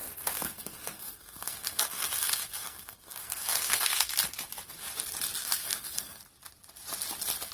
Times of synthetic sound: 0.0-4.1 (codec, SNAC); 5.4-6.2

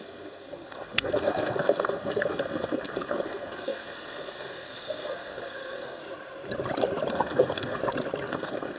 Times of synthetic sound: 0.0-6.0 (codec, SNAC); 7.1-7.8; 8.3-8.8

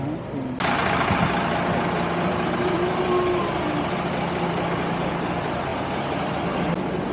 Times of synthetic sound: none

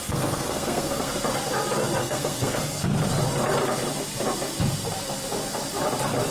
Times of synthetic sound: 0.0-1.1 (codec, SNAC); 2.0-2.9

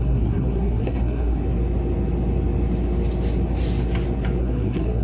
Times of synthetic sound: 0.0-1.4 (codec, SNAC); 4.4-5.0

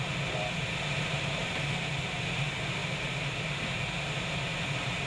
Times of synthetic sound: none

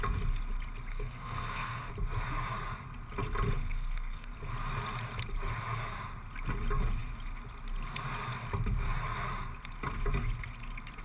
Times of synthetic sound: 0.9-1.9 (codec, SNAC); 3.6-4.3